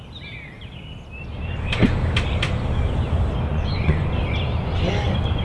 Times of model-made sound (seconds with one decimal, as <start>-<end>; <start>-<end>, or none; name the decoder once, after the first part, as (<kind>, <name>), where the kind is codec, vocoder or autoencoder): 3.5-4.1 (vocoder, Vocos)